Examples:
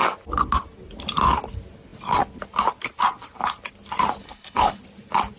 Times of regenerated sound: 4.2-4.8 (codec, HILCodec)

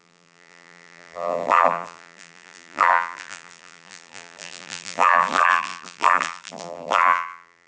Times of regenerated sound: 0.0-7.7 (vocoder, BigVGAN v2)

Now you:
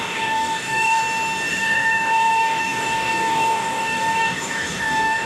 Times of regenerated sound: 0.0-1.0 (codec, DAC); 1.5-5.3

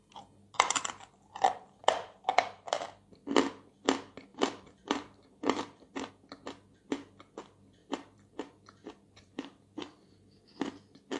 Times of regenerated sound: 0.4-1.3 (vocoder, BigVGAN v2); 1.8-2.6; 4.3-6.1; 7.8-11.2